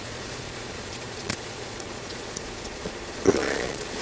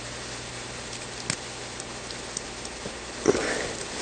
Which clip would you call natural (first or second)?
second